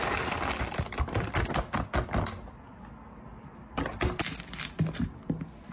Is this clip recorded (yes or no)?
yes